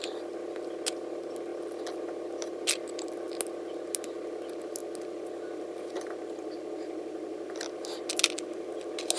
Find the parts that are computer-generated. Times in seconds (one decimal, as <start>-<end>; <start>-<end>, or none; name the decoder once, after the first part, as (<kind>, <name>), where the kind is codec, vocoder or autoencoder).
none